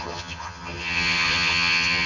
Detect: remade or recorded remade